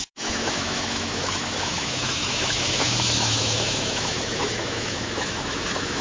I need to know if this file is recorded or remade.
remade